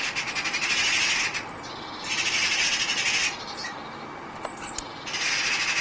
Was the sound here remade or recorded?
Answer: recorded